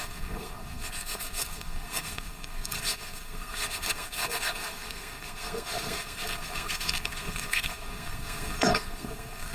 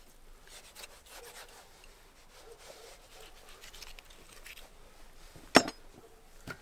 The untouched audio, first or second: second